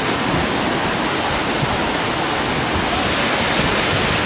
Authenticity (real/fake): real